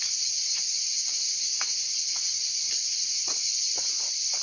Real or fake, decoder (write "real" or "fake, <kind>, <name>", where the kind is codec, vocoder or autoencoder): fake, vocoder, BigVGAN v2